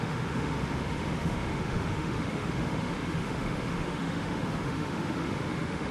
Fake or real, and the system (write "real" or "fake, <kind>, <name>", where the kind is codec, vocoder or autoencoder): fake, autoencoder, DAC-VAE